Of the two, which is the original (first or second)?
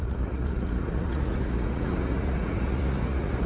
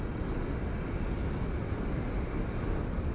second